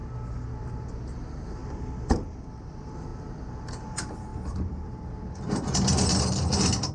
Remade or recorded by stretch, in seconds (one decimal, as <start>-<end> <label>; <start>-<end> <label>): 0.0-0.5 recorded; 0.5-1.6 remade; 1.6-2.7 recorded; 2.7-3.1 remade; 3.1-3.9 recorded; 3.9-4.3 remade; 4.3-6.2 recorded; 6.2-6.9 remade